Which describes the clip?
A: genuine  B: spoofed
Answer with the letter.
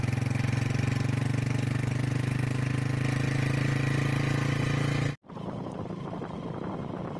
A